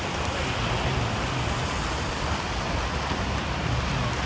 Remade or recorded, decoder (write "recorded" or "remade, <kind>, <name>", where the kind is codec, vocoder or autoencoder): recorded